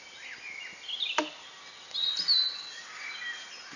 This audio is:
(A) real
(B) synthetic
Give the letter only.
A